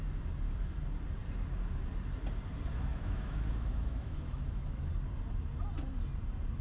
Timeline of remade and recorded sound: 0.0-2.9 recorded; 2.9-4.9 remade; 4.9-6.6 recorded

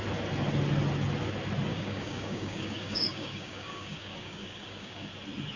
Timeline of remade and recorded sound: 0.0-1.7 recorded; 1.7-5.1 remade; 5.1-5.6 recorded

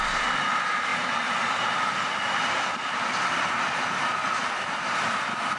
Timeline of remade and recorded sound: 0.0-5.6 recorded

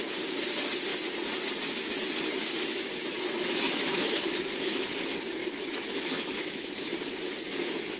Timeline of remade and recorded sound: 0.0-2.4 recorded; 2.4-4.9 remade; 4.9-5.4 recorded; 5.4-6.7 remade; 6.7-8.0 recorded

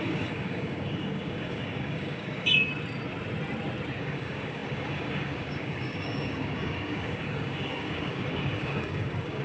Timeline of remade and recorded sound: 0.0-2.7 remade; 2.7-4.0 recorded; 4.0-9.4 remade